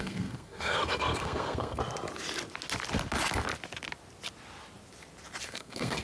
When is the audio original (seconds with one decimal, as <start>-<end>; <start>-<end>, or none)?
1.8-5.4